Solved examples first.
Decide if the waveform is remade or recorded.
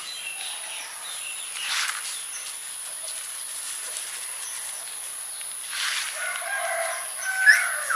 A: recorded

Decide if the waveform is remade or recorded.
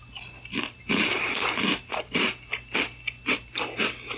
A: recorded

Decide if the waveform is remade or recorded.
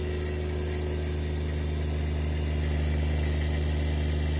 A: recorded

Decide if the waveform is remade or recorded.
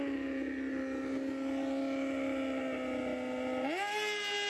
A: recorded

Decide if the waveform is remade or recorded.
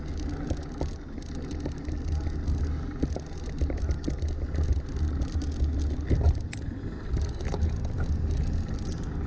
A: recorded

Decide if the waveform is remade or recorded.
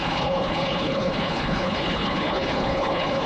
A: remade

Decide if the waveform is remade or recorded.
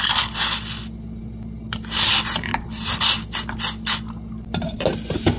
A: recorded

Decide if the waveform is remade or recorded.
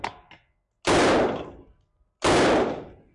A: recorded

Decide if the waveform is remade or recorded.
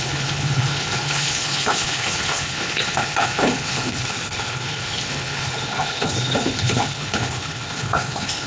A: remade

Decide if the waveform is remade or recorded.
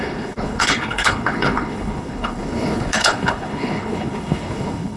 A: remade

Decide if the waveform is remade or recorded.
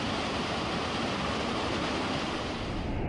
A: recorded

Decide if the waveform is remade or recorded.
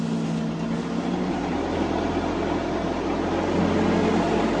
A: recorded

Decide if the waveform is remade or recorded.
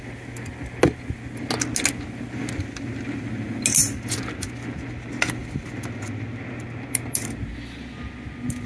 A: recorded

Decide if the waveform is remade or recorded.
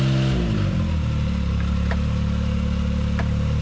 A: recorded